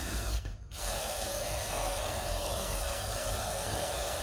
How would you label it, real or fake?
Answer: fake